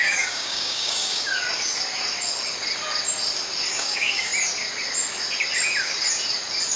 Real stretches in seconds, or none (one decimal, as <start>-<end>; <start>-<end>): 1.3-3.7; 4.3-6.8